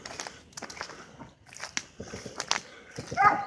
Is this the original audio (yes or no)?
yes